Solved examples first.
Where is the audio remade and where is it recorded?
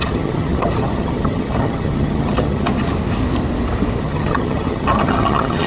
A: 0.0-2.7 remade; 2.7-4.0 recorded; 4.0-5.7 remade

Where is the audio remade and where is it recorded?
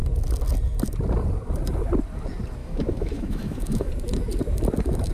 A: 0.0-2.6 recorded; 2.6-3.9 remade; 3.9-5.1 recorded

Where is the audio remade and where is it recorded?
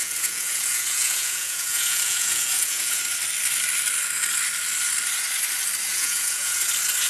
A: 0.0-3.0 remade; 3.0-5.9 recorded; 5.9-6.6 remade; 6.6-7.1 recorded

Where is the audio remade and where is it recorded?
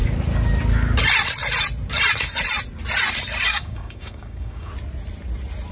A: 0.0-3.5 recorded; 3.5-4.7 remade; 4.7-5.7 recorded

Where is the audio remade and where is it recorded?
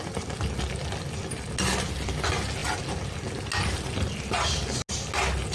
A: 0.0-5.5 recorded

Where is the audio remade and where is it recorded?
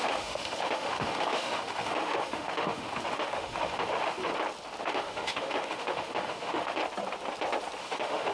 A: 0.0-4.3 remade; 4.3-4.8 recorded; 4.8-6.8 remade; 6.8-7.8 recorded; 7.8-8.3 remade